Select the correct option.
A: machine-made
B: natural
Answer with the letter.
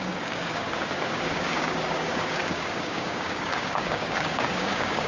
A